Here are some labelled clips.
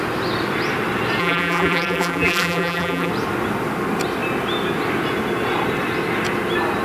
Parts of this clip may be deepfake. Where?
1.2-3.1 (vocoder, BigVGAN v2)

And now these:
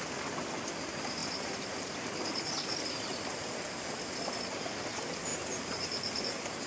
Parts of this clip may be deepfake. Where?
none

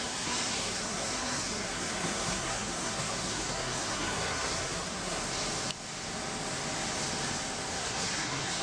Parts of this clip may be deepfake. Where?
0.0-5.2 (codec, SNAC); 7.7-8.6

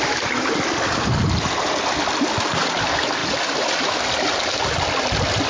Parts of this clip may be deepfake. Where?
none

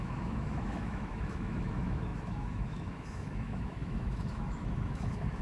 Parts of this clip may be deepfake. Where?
0.0-5.4 (autoencoder, DAC-VAE)